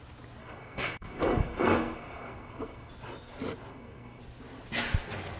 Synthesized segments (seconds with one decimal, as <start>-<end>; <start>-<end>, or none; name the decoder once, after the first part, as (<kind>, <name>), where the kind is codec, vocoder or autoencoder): 0.4-2.9 (codec, SNAC); 3.7-4.2